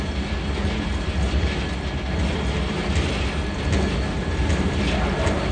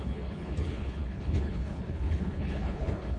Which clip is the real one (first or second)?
first